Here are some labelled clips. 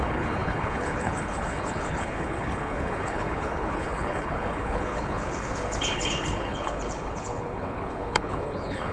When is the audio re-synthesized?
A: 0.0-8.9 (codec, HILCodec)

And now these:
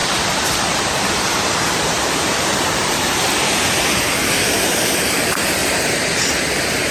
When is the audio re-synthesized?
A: 0.0-3.2 (vocoder, BigVGAN v2); 4.2-4.7; 5.6-6.2

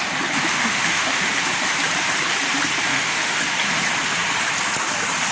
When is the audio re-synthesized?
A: 0.5-1.3 (autoencoder, DAC-VAE); 2.9-3.4

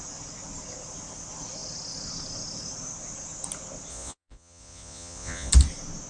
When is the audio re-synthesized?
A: 3.9-5.5 (vocoder, Vocos)

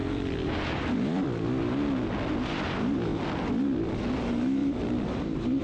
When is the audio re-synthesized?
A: 0.0-1.6 (vocoder, BigVGAN v2); 4.6-5.6

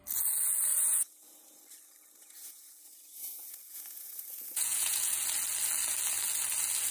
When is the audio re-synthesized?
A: 0.7-1.6 (vocoder, Vocos); 2.2-5.2

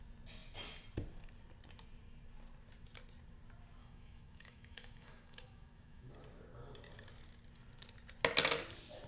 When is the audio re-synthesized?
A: 3.8-6.1 (autoencoder, DAC-VAE)